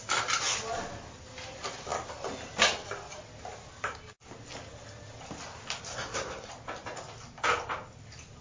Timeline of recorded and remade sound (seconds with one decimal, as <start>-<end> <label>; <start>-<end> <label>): 0.0-5.9 recorded; 5.9-6.5 remade; 6.5-8.4 recorded